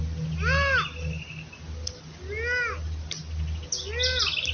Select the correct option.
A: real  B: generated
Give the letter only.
A